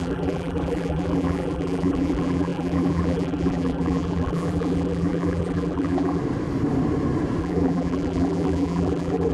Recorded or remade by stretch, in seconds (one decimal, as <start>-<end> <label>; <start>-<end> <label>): 0.0-6.2 remade; 6.2-7.4 recorded; 7.4-9.3 remade